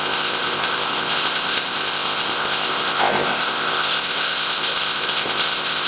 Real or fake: fake